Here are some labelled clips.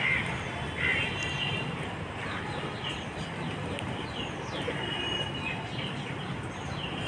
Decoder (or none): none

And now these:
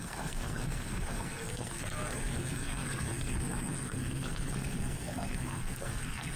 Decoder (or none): codec, SNAC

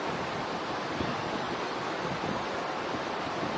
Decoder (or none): none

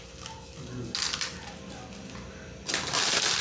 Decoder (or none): none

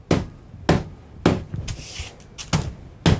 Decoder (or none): none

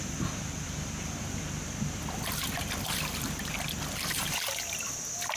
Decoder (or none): none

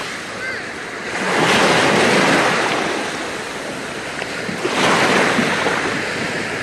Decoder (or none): none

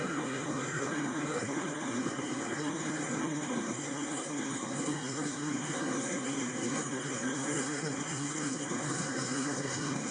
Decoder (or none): codec, SNAC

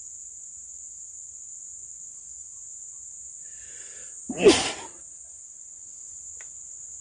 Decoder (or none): none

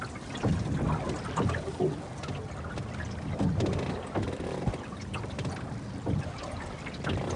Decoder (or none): none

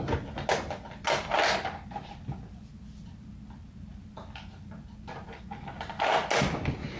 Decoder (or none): none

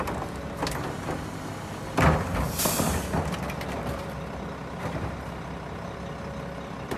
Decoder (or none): none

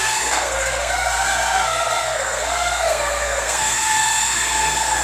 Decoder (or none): codec, SNAC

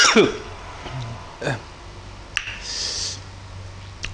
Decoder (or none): none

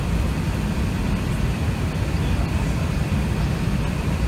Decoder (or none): none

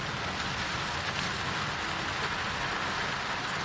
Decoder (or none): none